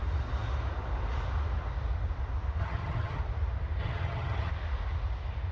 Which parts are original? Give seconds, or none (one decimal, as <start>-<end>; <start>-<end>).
0.0-2.6; 3.2-3.8; 4.5-5.5